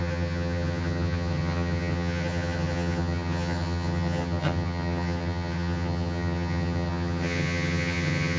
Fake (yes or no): yes